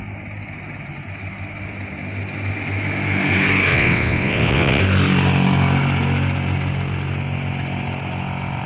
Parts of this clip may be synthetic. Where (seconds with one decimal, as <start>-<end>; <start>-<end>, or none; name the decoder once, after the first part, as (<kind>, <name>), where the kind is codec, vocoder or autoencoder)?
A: 3.7-4.8 (vocoder, WaveNeXt)